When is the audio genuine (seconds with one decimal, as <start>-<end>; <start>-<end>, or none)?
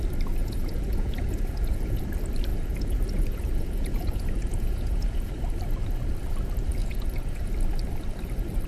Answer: 0.0-0.4; 2.0-2.5; 5.3-6.8; 7.5-8.7